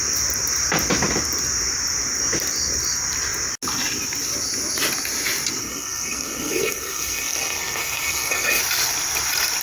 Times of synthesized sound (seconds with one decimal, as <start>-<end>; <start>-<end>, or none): 5.6-8.6